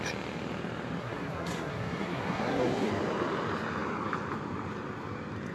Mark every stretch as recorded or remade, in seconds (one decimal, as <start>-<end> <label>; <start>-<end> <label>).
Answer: 0.0-1.0 recorded; 1.0-2.9 remade; 2.9-5.5 recorded